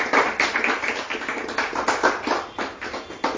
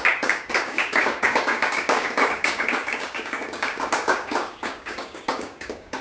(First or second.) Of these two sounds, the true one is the first